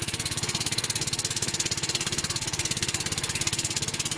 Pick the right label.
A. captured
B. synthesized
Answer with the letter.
B